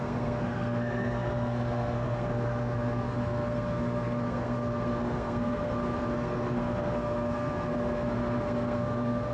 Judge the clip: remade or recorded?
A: remade